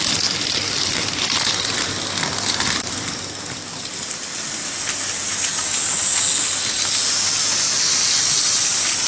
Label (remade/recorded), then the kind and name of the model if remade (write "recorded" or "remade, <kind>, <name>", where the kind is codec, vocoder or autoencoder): recorded